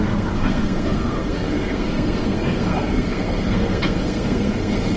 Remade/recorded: remade